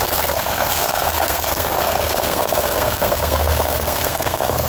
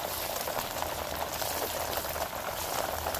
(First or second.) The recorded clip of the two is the second